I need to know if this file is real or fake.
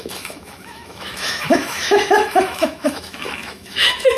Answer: fake